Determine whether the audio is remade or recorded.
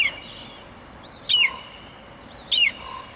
recorded